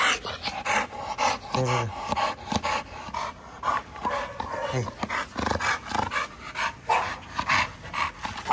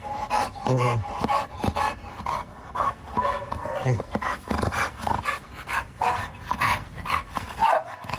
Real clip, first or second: first